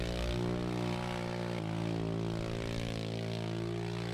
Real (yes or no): yes